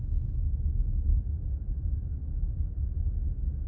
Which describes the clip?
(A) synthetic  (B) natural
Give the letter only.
B